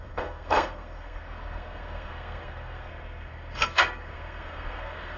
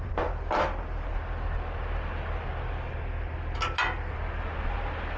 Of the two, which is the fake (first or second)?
first